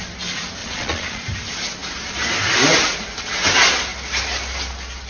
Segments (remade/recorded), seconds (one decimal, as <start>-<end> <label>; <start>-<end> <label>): 0.0-0.6 recorded; 0.6-1.2 remade; 1.2-5.1 recorded